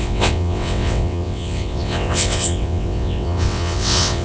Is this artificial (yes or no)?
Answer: yes